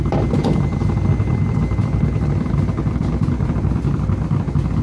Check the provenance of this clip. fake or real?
fake